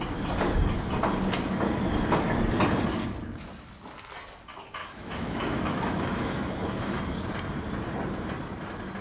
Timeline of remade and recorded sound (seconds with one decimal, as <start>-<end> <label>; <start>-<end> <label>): 0.0-4.8 recorded; 4.8-7.0 remade; 7.0-9.0 recorded